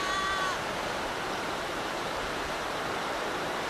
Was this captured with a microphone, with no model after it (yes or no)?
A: no